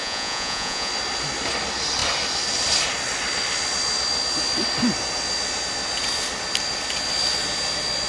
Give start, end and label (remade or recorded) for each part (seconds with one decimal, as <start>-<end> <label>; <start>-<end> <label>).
0.0-0.9 remade; 0.9-8.1 recorded